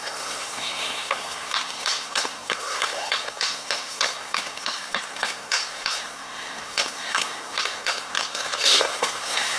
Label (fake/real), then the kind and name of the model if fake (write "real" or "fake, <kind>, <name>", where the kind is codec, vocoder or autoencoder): fake, codec, SNAC